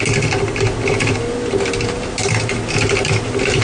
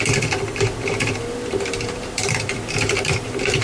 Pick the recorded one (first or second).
first